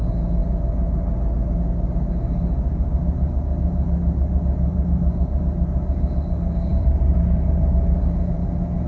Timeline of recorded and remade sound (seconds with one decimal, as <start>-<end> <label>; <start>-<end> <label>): 0.0-4.7 recorded; 4.7-5.4 remade; 5.4-6.7 recorded; 6.7-8.5 remade; 8.5-8.9 recorded